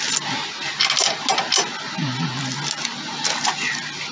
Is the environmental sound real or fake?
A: real